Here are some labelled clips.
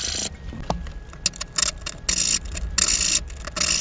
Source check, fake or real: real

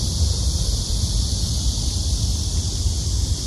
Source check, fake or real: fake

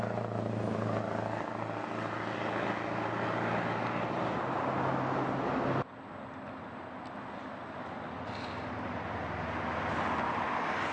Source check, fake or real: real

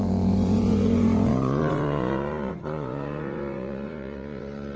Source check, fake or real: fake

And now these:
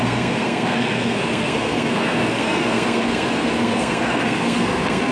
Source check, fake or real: fake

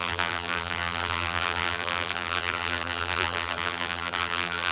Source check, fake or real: fake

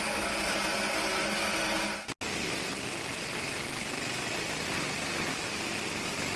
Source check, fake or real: real